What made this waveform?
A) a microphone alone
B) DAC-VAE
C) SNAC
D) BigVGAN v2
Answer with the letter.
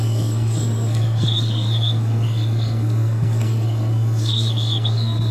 C